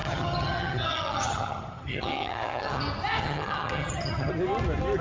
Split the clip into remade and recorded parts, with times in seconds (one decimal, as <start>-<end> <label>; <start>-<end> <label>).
0.0-2.8 remade; 2.8-3.2 recorded; 3.2-4.3 remade; 4.3-5.0 recorded